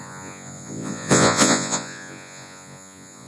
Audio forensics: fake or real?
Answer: fake